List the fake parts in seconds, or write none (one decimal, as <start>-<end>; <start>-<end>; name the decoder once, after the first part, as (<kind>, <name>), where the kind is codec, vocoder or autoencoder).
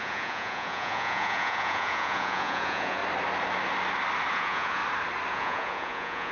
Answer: 0.0-3.0 (vocoder, Vocos); 4.3-4.8; 5.3-6.3